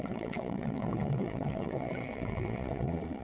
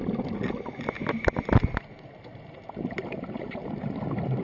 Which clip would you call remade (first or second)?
first